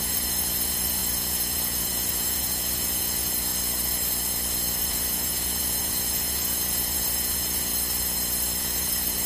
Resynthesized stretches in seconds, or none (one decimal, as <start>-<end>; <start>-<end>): 0.0-3.5; 4.8-7.7; 8.6-9.3